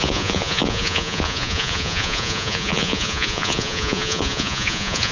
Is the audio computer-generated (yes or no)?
yes